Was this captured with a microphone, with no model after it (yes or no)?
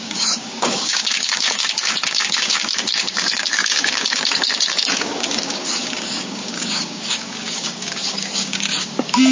no